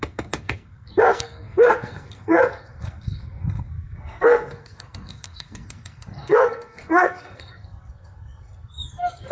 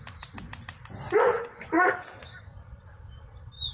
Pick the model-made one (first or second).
first